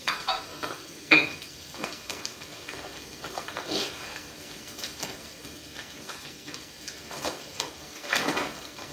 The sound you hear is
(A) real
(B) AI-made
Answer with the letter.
B